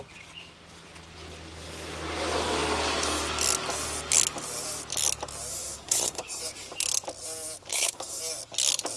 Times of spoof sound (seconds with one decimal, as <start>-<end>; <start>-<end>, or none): 5.5-6.4; 7.7-8.2